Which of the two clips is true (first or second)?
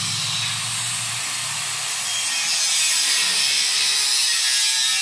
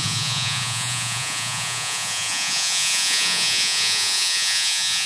first